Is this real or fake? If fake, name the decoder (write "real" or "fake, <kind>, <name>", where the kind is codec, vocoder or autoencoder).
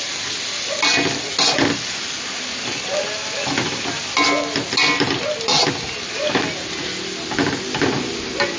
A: real